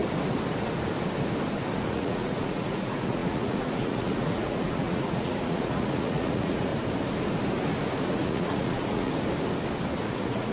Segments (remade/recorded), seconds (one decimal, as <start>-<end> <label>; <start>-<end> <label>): 0.0-1.7 recorded; 1.7-6.7 remade; 6.7-8.1 recorded; 8.1-9.1 remade; 9.1-10.1 recorded; 10.1-10.5 remade